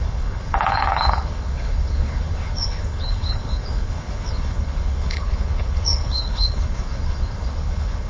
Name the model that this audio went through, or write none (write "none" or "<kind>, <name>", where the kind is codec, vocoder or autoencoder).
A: codec, HILCodec